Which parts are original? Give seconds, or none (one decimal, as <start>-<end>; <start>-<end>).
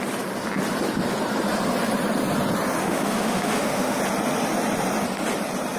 0.0-2.8; 4.0-5.8